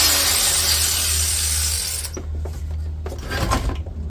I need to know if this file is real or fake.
real